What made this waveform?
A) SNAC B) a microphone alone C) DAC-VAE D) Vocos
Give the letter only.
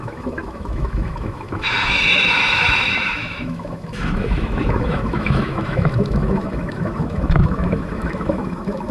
C